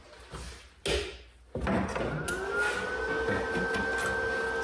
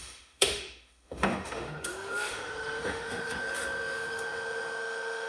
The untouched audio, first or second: first